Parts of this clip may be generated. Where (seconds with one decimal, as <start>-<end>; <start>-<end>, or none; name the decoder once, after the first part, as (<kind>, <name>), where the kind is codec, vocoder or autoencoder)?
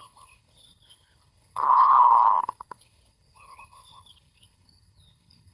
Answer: 0.0-5.5 (codec, HILCodec)